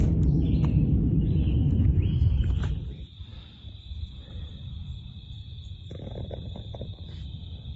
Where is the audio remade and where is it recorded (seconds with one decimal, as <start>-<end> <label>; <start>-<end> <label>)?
0.0-1.6 recorded; 1.6-2.1 remade; 2.1-7.8 recorded